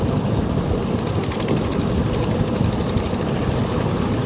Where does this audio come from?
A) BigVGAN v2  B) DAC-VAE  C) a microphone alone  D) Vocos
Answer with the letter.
C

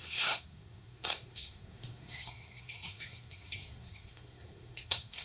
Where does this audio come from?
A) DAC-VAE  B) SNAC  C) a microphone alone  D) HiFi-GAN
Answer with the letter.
B